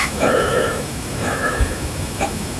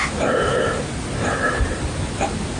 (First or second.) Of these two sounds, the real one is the second